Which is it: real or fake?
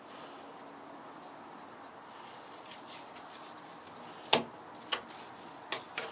real